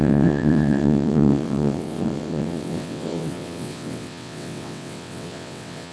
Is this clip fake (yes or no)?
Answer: yes